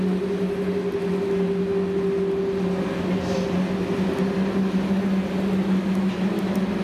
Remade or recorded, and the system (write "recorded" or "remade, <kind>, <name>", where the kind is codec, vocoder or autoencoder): recorded